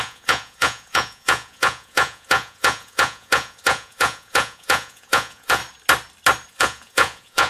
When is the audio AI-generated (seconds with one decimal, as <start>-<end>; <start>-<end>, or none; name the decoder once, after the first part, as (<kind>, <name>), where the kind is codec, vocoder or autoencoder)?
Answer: 0.0-5.6 (vocoder, Vocos); 6.5-7.5